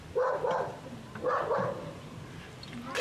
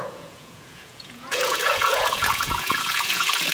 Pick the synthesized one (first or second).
second